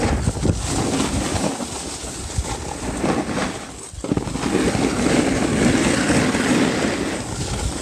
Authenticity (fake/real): real